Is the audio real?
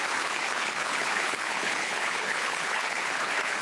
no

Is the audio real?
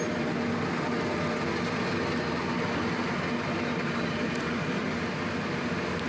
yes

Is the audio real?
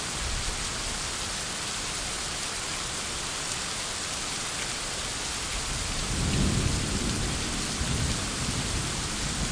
yes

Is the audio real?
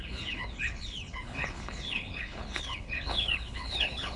no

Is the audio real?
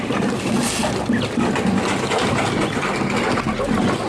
yes